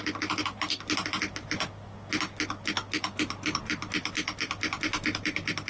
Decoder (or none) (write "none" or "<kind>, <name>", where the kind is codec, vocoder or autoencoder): none